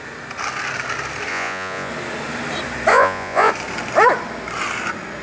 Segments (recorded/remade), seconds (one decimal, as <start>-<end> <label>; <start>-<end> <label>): 0.0-1.3 recorded; 1.3-1.9 remade; 1.9-2.9 recorded; 2.9-3.5 remade; 3.5-5.2 recorded